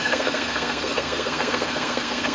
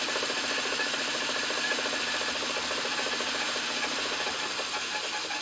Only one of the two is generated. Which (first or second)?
first